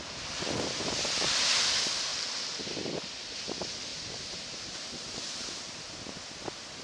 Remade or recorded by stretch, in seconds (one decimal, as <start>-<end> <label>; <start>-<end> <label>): 0.0-3.9 recorded; 3.9-5.7 remade; 5.7-6.8 recorded